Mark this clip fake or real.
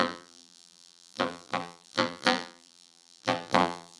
fake